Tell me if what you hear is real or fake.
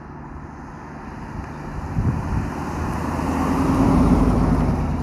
real